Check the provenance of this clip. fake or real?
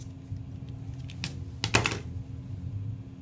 real